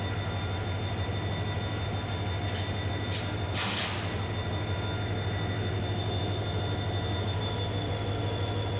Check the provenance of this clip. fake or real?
real